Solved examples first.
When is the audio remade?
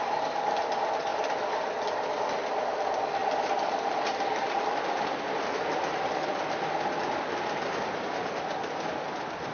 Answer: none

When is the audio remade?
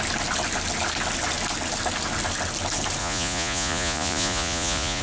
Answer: 3.0-5.0 (vocoder, Vocos)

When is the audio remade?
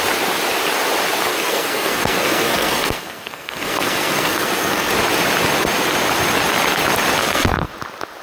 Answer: 1.3-4.9 (codec, SNAC); 7.2-7.7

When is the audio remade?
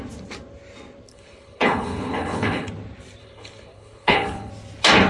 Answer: 1.1-2.7 (codec, HILCodec); 3.2-4.5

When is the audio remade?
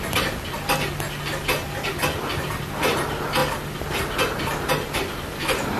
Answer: none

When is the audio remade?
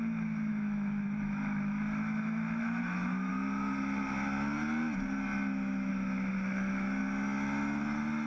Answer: 0.5-3.3 (autoencoder, DAC-VAE); 5.9-7.0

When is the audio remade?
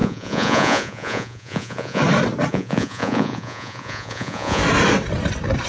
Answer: 0.0-2.0 (vocoder, Vocos); 2.5-4.6